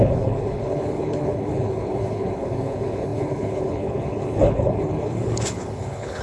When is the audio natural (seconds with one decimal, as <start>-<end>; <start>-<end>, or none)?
none